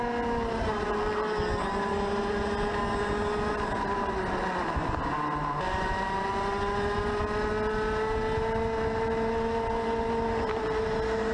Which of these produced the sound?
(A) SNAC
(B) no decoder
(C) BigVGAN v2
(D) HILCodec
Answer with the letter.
B